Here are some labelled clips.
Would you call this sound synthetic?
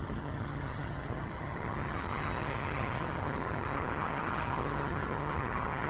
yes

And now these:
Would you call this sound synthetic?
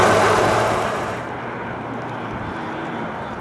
yes